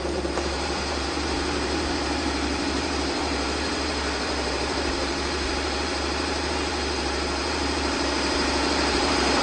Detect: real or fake fake